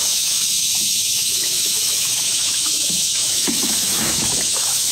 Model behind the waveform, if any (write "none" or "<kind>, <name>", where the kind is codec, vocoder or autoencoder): autoencoder, DAC-VAE